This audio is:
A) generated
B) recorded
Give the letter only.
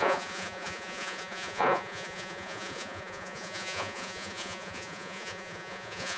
A